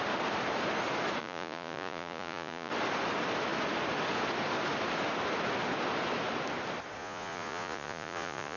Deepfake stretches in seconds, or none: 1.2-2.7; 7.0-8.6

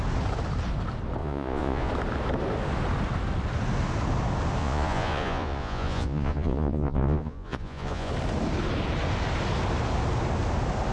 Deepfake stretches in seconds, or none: 1.2-1.9; 4.6-8.1

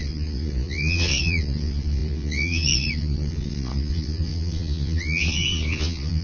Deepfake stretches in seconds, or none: 0.0-6.2

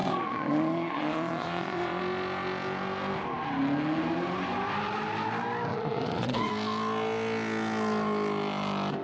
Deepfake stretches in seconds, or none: 0.0-2.0; 5.7-6.5

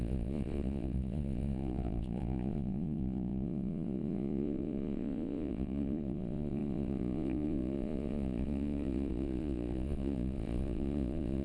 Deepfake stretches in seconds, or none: 0.0-11.4

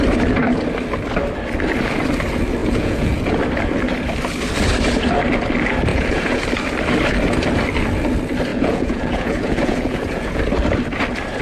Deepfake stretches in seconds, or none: 2.6-3.4; 5.9-6.4; 8.5-10.4

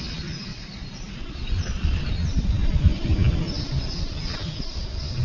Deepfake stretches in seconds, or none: 0.5-2.1